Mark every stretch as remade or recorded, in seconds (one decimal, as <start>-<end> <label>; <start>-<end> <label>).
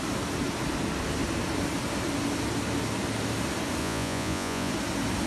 0.0-3.8 recorded; 3.8-4.7 remade; 4.7-5.3 recorded